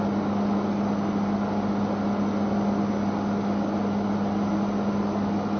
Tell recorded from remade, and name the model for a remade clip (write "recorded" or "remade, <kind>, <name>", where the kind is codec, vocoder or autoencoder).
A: recorded